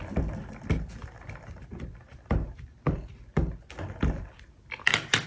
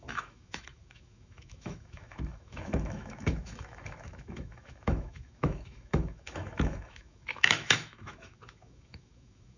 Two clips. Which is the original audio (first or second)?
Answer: first